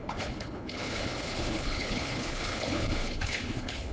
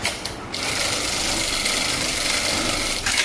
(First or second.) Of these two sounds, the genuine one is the second